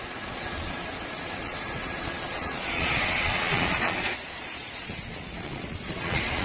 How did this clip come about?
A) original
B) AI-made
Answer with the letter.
B